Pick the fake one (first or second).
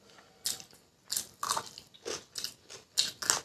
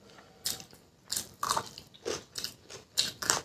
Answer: second